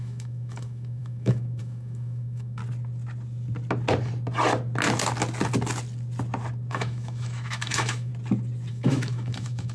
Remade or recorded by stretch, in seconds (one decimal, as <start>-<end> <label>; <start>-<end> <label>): 0.0-2.6 remade; 2.6-6.7 recorded; 6.7-8.1 remade; 8.1-8.7 recorded; 8.7-9.7 remade